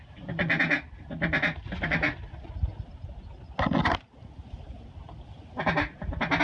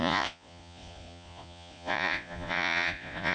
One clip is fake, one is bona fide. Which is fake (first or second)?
second